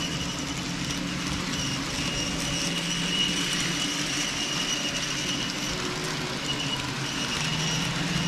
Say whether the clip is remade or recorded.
recorded